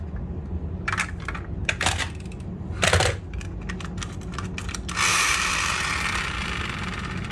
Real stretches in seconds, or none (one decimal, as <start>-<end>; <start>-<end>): 0.0-5.1; 5.9-7.3